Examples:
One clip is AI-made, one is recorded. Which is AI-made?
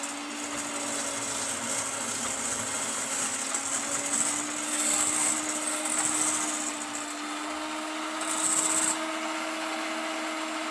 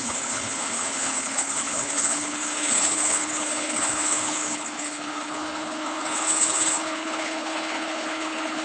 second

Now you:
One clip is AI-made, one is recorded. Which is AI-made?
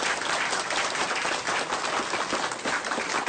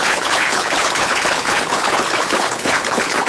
second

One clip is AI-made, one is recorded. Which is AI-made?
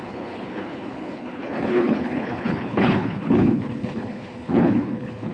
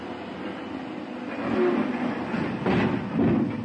first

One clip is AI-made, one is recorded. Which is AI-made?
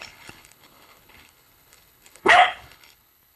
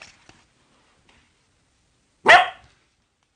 first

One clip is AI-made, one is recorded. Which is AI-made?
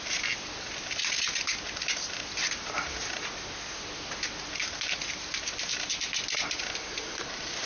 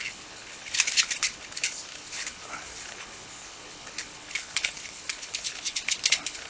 second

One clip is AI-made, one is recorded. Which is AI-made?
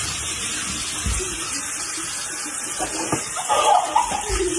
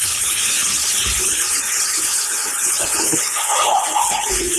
second